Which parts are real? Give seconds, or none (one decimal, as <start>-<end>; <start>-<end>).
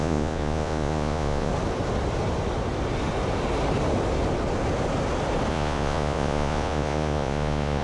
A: 1.5-5.5